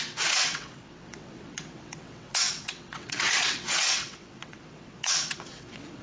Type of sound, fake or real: fake